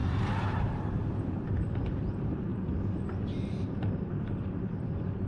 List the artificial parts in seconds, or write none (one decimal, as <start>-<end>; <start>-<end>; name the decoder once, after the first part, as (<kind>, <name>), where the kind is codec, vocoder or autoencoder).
0.0-2.5 (vocoder, BigVGAN v2); 3.6-5.3